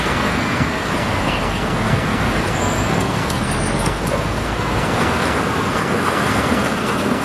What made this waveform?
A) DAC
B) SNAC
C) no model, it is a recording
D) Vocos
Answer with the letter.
B